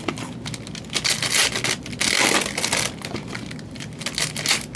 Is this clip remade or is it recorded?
recorded